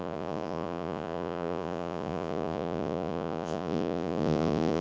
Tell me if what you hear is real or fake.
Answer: fake